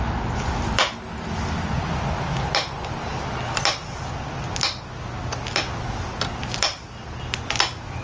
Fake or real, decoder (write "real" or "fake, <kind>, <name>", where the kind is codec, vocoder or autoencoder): real